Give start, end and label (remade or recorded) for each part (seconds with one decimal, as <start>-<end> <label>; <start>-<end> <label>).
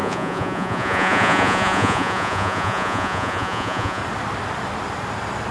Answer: 0.0-4.0 remade; 4.0-5.5 recorded